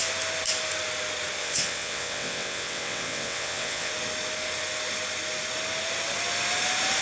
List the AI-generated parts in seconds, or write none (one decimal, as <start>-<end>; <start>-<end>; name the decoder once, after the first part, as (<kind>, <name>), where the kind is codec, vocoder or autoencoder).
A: 1.4-3.9 (vocoder, WaveNeXt)